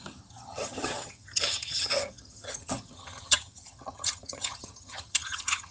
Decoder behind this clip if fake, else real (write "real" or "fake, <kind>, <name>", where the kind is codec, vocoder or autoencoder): fake, vocoder, HiFi-GAN